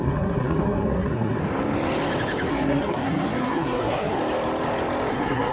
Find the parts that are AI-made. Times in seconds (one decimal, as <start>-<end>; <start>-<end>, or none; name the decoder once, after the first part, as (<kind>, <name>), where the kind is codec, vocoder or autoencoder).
0.0-1.4 (codec, SNAC); 2.5-4.2; 5.1-5.5